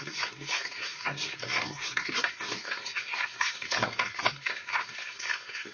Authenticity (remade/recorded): remade